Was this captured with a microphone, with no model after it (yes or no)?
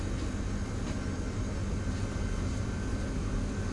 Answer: yes